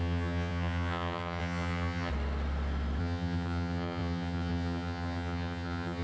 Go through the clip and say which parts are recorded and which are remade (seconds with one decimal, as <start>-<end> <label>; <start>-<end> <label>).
0.0-2.1 remade; 2.1-3.0 recorded; 3.0-6.0 remade